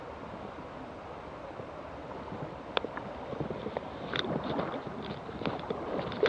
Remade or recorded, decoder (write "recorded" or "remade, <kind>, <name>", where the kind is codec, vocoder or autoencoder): recorded